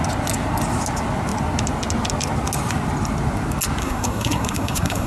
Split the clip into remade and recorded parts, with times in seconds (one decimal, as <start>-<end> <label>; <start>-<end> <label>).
0.0-3.8 recorded; 3.8-5.1 remade